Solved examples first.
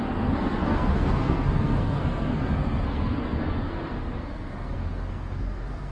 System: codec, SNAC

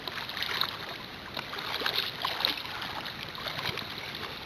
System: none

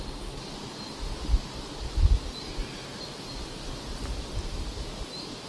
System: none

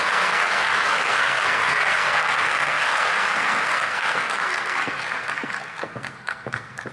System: codec, SNAC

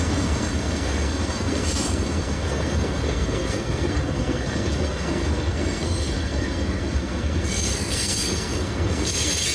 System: codec, SNAC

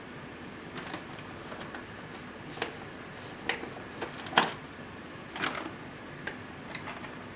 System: none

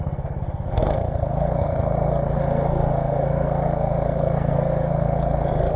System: codec, SNAC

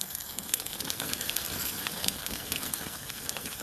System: codec, SNAC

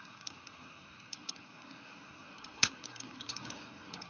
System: codec, SNAC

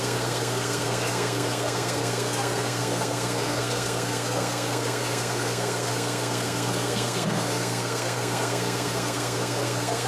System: codec, SNAC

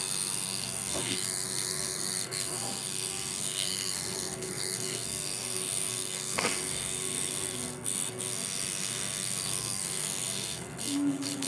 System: codec, SNAC